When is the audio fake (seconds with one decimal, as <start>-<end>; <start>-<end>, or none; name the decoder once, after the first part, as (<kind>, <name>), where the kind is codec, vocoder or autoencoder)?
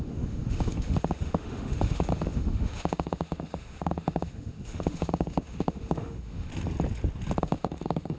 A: 0.0-6.5 (autoencoder, DAC-VAE); 7.4-8.2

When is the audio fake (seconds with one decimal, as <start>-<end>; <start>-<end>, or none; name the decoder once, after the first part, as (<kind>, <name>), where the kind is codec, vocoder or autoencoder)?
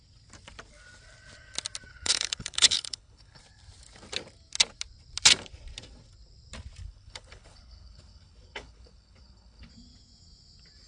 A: 1.9-3.4 (codec, HILCodec); 6.8-9.7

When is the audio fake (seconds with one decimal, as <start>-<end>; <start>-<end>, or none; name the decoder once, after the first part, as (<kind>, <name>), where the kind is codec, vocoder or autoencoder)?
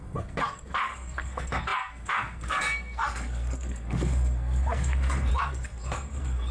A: 0.0-6.5 (codec, SNAC)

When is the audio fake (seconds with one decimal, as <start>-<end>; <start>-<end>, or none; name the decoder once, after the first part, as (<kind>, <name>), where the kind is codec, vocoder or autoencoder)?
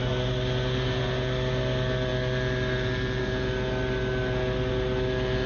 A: none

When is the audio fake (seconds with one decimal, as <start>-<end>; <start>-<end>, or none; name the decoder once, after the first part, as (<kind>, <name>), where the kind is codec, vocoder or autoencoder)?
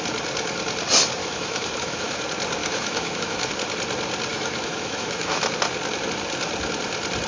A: 1.2-2.2 (autoencoder, DAC-VAE); 2.6-3.5; 4.3-5.4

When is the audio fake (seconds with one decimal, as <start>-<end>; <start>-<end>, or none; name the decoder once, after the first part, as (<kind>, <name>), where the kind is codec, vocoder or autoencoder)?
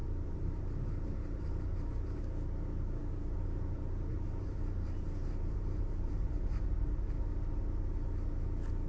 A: 0.0-2.2 (vocoder, BigVGAN v2); 3.0-6.7